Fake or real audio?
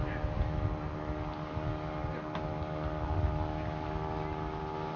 real